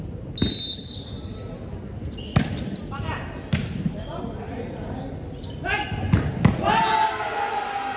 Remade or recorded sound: recorded